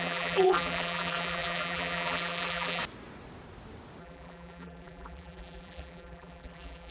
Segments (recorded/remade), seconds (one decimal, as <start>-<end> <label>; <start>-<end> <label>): 0.0-2.8 remade; 2.8-4.0 recorded; 4.0-6.9 remade